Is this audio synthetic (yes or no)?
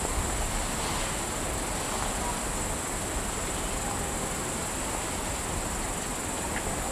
no